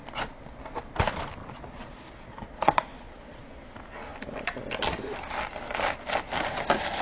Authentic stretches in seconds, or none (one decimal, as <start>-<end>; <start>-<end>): 0.0-1.4; 3.5-7.0